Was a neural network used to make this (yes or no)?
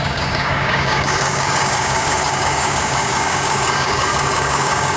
yes